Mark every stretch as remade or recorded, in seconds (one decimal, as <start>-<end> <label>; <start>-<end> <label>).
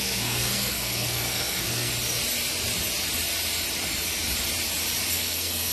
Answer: 0.0-1.9 remade; 1.9-5.1 recorded; 5.1-5.7 remade